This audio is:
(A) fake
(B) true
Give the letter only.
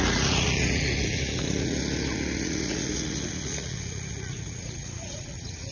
A